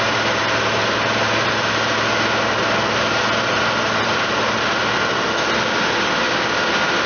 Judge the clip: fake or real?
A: real